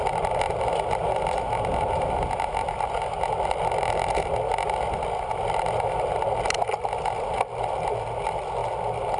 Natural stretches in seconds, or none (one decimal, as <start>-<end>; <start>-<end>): 0.0-9.2